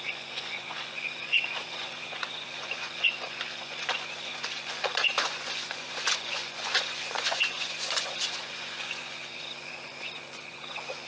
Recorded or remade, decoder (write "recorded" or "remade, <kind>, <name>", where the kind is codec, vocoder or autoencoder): remade, vocoder, Vocos